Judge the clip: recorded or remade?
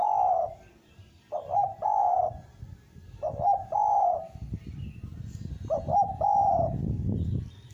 recorded